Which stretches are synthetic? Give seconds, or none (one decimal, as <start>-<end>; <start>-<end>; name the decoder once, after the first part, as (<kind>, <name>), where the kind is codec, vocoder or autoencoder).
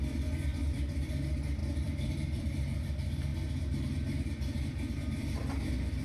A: 0.0-3.3 (vocoder, BigVGAN v2); 5.1-6.0